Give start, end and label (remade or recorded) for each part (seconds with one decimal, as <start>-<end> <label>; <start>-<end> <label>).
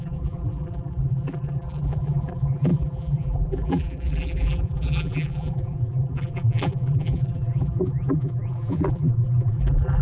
0.0-10.0 remade